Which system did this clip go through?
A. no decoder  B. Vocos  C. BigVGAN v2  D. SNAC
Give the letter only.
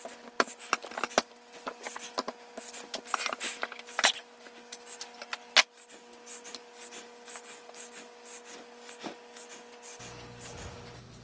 A